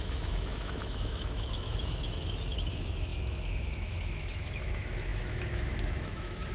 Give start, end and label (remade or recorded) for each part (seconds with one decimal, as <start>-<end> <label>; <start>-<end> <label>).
0.0-6.5 remade